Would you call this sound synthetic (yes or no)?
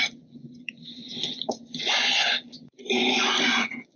yes